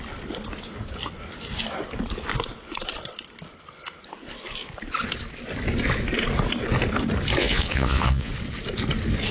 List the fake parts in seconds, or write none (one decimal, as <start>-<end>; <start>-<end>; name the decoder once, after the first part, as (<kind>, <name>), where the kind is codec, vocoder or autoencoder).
7.4-8.3 (vocoder, Vocos)